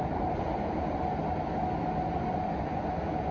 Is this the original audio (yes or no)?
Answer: yes